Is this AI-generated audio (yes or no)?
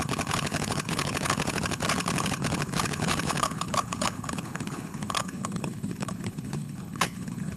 yes